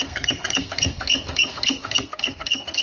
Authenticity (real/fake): fake